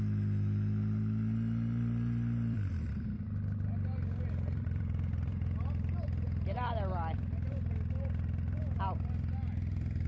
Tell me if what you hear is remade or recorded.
remade